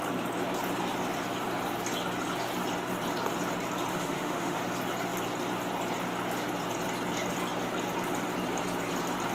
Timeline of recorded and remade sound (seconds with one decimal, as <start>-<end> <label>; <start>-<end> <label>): 0.0-3.9 recorded; 3.9-4.6 remade; 4.6-9.3 recorded